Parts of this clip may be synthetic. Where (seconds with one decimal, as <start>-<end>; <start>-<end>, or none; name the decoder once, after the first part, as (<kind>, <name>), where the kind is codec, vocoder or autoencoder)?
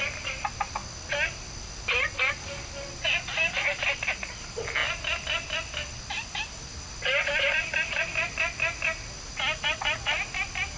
none